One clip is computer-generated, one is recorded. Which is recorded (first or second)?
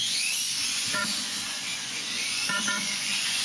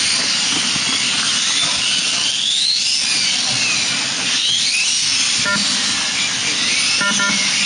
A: second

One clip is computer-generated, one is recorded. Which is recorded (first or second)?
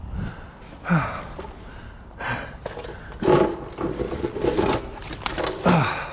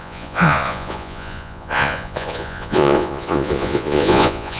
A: first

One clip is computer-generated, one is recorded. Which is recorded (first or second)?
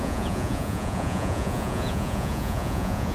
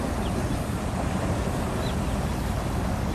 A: second